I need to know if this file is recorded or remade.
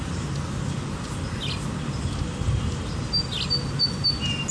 recorded